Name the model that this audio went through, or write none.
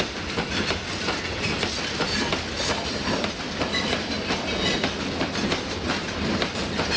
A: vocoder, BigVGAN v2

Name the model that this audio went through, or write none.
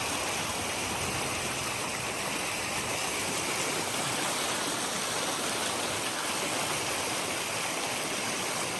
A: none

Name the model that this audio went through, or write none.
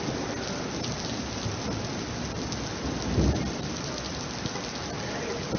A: none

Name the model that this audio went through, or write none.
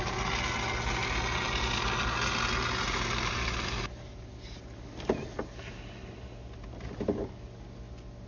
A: none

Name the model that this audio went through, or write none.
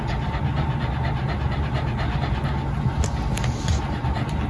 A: none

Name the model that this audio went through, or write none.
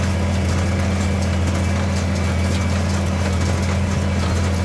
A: none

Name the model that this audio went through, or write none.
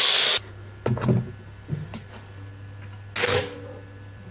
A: none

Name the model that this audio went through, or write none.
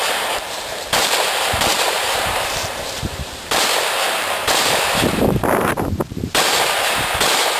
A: vocoder, BigVGAN v2